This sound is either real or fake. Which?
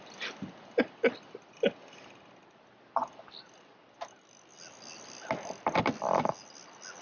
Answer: real